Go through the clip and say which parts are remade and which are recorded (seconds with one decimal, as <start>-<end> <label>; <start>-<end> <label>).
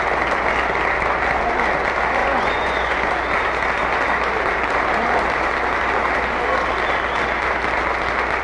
0.0-2.2 recorded; 2.2-3.0 remade; 3.0-8.4 recorded